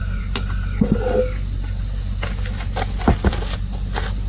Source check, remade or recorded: recorded